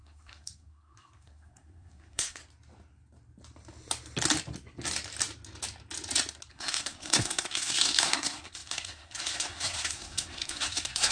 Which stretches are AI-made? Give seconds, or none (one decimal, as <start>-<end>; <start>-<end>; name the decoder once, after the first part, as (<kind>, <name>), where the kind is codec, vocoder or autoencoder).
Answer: 0.0-2.4 (codec, SNAC); 6.5-11.1